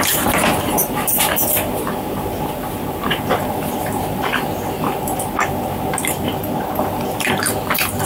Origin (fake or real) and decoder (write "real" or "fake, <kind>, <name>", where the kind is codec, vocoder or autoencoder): fake, vocoder, BigVGAN v2